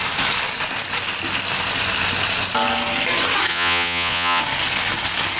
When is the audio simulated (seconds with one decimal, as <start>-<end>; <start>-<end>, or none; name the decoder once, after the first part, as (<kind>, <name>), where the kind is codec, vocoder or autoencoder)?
3.5-4.4 (vocoder, Vocos)